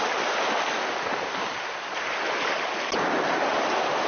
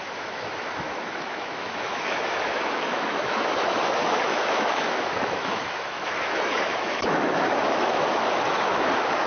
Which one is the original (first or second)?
first